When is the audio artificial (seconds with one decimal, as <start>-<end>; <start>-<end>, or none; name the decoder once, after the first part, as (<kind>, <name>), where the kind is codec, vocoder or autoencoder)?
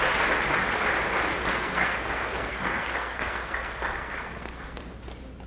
1.5-4.8 (codec, SNAC)